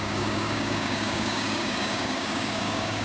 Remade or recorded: remade